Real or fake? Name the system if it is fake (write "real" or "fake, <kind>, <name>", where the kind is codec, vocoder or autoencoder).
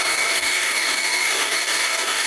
fake, codec, DAC